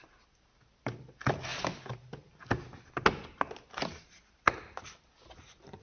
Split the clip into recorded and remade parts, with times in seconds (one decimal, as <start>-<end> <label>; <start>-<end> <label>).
0.0-5.8 recorded